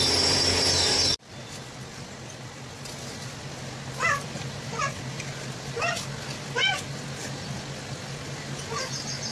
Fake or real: real